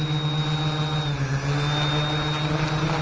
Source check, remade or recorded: recorded